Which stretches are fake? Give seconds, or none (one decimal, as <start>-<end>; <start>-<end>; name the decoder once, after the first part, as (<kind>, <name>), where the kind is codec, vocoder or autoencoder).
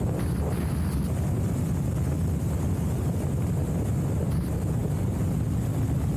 4.8-6.2 (vocoder, BigVGAN v2)